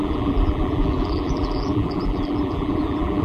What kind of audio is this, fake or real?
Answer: fake